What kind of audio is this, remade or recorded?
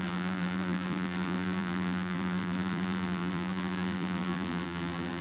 remade